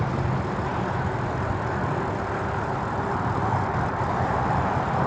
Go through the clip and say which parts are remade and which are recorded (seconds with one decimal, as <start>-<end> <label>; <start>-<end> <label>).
0.0-5.1 remade